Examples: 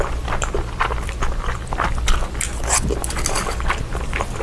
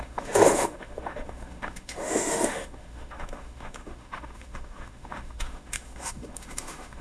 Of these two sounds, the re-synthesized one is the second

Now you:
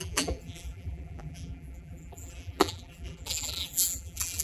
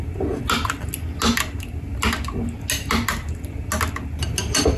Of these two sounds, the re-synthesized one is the first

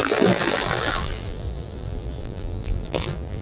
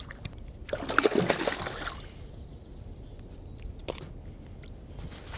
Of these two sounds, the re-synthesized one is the first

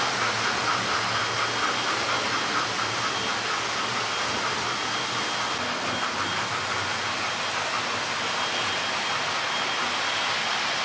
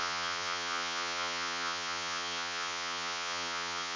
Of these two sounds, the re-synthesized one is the second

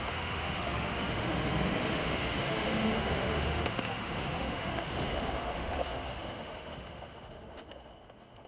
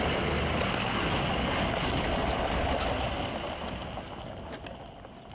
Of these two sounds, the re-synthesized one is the first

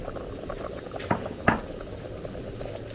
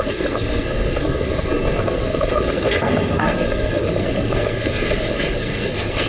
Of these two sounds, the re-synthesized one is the second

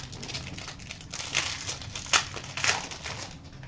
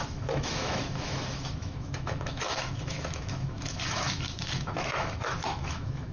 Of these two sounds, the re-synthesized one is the second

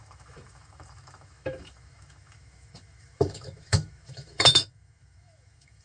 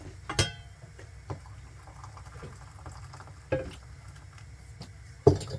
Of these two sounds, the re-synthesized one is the first